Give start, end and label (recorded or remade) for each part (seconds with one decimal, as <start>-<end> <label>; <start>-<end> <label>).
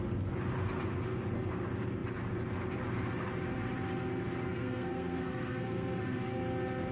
0.0-4.5 recorded; 4.5-6.0 remade; 6.0-6.9 recorded